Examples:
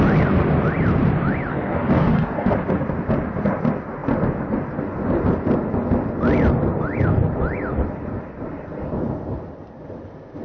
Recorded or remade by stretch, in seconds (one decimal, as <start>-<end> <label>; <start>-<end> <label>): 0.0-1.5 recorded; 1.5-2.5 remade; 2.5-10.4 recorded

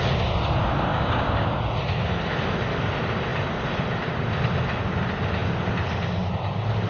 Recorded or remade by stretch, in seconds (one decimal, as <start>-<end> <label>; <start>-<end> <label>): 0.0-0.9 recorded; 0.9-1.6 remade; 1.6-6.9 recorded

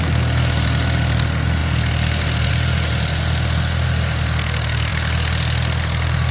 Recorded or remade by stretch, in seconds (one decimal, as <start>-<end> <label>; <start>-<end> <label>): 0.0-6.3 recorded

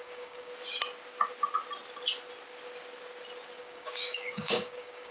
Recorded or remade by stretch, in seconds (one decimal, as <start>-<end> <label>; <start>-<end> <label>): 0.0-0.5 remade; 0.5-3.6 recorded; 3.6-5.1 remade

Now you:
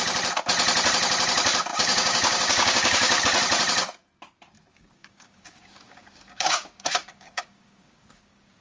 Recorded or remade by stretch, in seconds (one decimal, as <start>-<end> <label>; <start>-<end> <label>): 0.0-1.7 recorded; 1.7-3.2 remade; 3.2-4.7 recorded; 4.7-8.6 remade